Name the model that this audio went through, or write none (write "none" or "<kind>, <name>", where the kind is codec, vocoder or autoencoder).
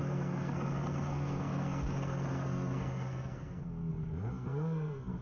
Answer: codec, SNAC